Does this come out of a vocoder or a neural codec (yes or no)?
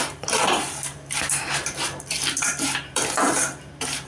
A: yes